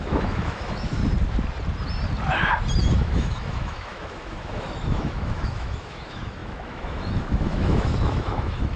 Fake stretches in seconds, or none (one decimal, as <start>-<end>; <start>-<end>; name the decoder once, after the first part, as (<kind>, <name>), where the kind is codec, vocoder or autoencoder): 0.0-1.0 (autoencoder, DAC-VAE); 2.8-8.8